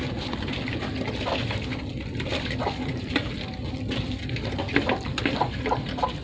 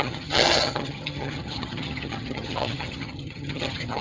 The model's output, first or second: second